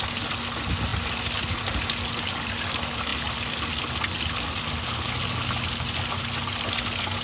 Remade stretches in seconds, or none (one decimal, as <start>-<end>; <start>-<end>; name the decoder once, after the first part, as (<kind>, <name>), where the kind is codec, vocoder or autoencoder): none